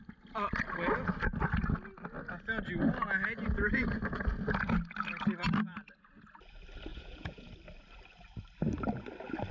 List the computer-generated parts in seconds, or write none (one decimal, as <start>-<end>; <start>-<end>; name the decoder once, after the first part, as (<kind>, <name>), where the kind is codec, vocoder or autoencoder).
6.9-7.5 (vocoder, Vocos)